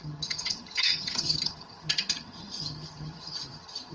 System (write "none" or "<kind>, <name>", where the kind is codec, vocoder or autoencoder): vocoder, HiFi-GAN